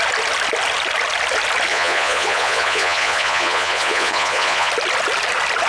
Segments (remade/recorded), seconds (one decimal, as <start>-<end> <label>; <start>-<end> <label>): 0.0-1.7 recorded; 1.7-4.7 remade; 4.7-5.7 recorded

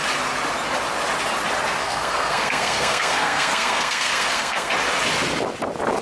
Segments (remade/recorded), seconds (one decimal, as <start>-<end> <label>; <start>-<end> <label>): 0.0-1.8 recorded; 1.8-4.7 remade; 4.7-6.0 recorded

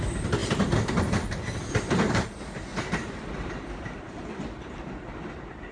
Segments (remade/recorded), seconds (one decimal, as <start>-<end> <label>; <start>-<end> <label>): 0.0-5.7 recorded

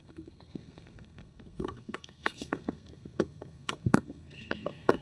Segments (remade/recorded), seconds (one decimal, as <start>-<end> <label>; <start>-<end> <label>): 0.0-5.0 remade

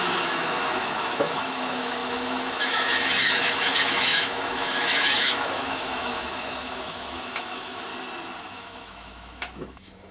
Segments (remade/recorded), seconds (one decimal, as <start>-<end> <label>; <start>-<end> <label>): 0.0-7.9 remade; 7.9-8.4 recorded; 8.4-10.1 remade